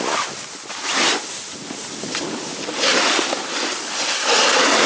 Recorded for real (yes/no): yes